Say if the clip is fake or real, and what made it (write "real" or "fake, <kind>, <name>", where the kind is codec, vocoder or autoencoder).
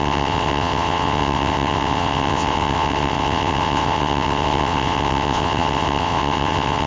fake, vocoder, WaveNeXt